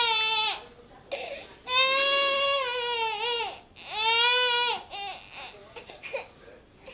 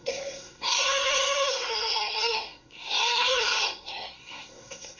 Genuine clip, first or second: first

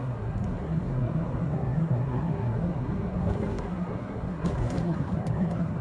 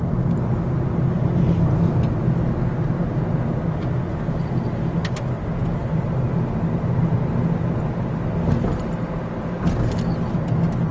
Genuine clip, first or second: second